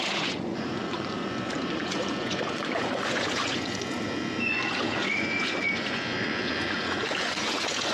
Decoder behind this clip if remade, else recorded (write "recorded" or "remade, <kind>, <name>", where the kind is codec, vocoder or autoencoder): remade, vocoder, Vocos